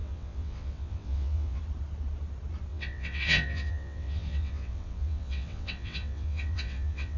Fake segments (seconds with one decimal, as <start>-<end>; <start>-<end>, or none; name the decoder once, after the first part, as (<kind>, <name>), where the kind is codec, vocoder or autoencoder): 0.0-1.6 (vocoder, WaveNeXt); 2.7-7.2